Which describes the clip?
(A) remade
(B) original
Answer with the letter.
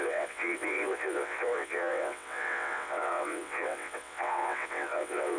A